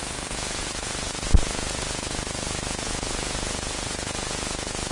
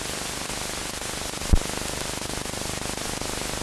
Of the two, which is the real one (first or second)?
second